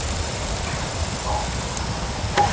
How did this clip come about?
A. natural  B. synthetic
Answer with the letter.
A